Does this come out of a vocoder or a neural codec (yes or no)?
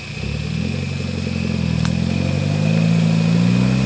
no